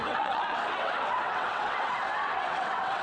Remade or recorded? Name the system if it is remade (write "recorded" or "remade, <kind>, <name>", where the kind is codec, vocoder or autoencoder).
remade, vocoder, WaveNeXt